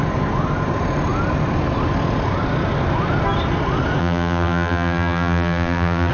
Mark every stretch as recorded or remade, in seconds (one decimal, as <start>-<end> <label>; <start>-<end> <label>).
0.0-4.0 recorded; 4.0-6.1 remade